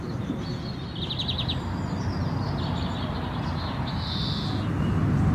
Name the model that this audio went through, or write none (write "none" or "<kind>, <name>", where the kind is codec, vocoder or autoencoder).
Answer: none